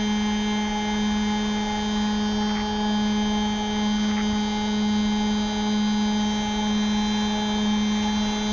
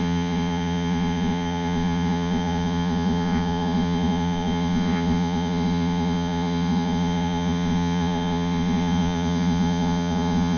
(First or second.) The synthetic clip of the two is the second